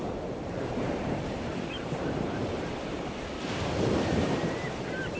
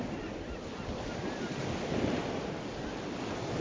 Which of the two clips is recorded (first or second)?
second